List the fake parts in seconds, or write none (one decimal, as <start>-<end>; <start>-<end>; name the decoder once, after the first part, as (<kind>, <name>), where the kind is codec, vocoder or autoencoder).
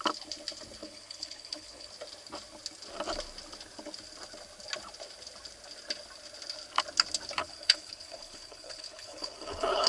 0.8-1.9 (codec, HILCodec); 7.4-9.9